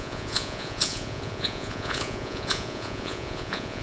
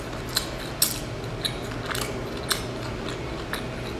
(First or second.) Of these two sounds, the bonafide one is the second